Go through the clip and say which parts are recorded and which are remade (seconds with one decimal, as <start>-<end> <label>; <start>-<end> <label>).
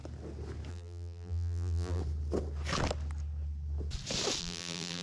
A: 0.0-0.7 recorded; 0.7-2.0 remade; 2.0-4.4 recorded; 4.4-5.0 remade